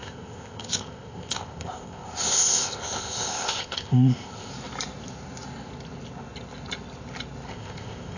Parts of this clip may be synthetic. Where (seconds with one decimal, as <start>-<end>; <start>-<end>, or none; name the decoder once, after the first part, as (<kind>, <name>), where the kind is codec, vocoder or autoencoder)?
0.0-4.5 (codec, ZipCodec); 7.5-8.2